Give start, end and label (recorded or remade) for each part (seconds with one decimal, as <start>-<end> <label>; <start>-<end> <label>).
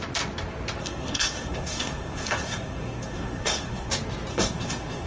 0.0-0.8 recorded; 0.8-3.9 remade; 3.9-4.3 recorded; 4.3-5.1 remade